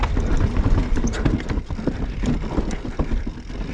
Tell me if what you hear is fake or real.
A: real